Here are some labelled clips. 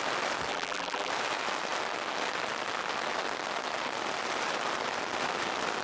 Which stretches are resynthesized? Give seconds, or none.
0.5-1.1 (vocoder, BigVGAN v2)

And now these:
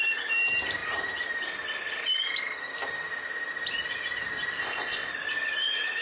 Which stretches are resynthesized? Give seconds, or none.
4.6-5.1 (codec, ZipCodec)

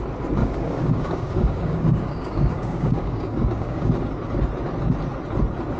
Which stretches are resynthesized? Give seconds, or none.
0.4-3.9 (codec, DAC)

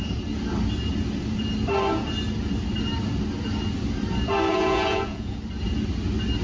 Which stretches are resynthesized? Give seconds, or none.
4.5-5.4 (vocoder, Vocos)

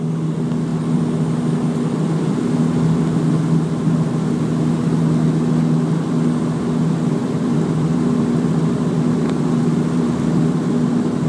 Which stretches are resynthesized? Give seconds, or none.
7.2-10.4 (vocoder, BigVGAN v2)

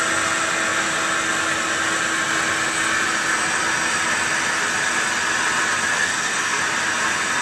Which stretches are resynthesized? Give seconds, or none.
5.9-6.6 (codec, SNAC)

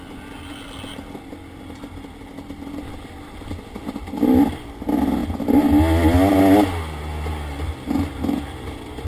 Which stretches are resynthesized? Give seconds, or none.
none